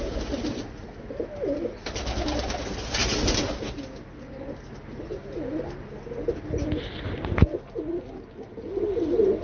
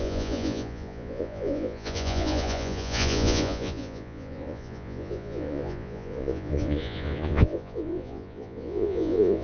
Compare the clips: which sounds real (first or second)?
first